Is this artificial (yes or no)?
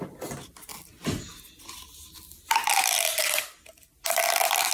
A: no